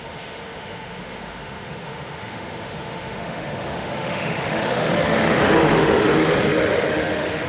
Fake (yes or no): yes